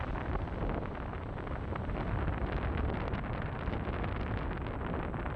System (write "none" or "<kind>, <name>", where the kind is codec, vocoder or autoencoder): vocoder, BigVGAN v2